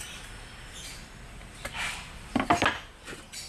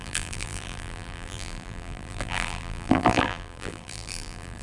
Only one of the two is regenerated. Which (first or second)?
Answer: second